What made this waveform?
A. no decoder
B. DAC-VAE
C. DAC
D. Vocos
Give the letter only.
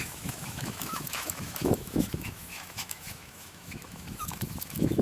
B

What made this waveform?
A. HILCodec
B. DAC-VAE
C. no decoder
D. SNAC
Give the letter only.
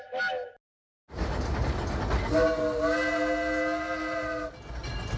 C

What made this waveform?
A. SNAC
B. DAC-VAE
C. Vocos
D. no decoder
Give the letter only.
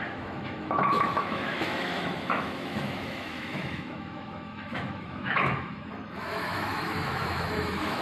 B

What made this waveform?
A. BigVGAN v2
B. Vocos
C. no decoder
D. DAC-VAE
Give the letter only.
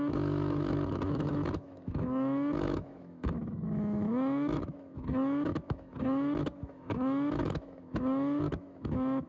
D